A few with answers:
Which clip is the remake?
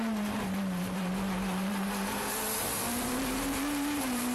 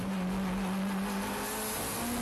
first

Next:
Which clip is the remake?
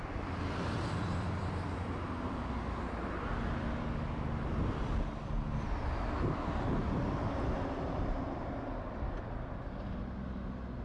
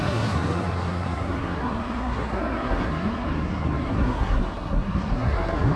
second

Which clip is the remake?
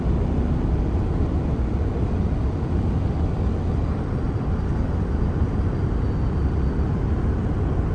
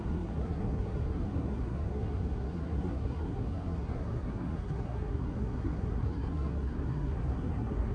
second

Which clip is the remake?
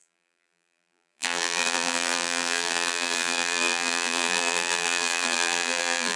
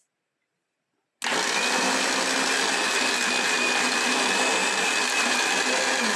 first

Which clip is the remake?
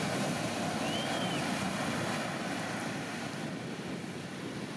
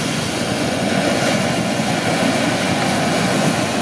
second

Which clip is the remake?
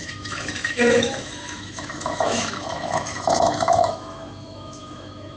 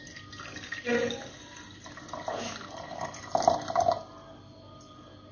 first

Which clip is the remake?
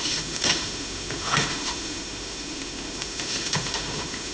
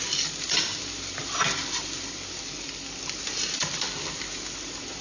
first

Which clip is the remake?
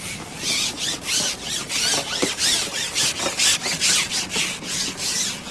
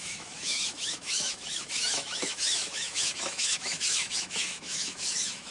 second